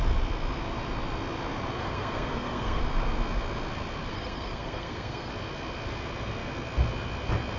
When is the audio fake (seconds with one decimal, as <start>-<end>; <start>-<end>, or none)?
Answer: 1.8-2.8; 4.1-5.3